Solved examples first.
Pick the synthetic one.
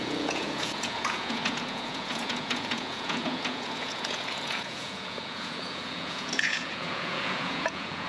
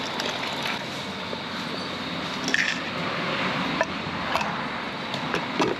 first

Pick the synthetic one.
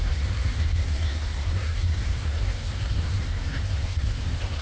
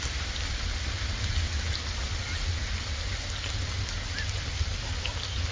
first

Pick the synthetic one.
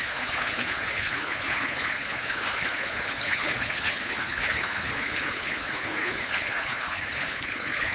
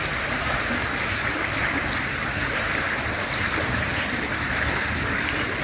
first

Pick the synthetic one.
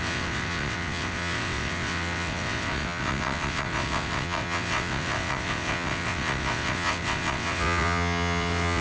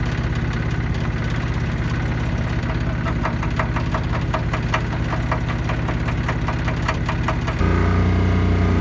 first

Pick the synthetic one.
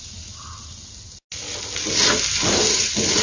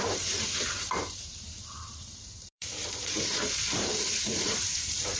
second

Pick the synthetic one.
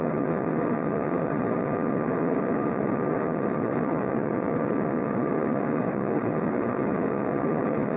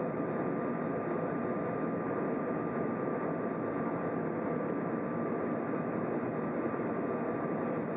first